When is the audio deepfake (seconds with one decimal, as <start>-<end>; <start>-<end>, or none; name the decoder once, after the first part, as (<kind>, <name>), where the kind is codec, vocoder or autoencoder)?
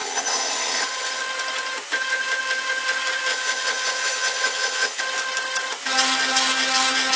0.0-1.2 (vocoder, HiFi-GAN); 3.3-5.0